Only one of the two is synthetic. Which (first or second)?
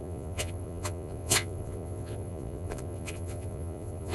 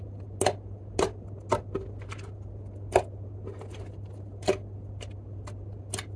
first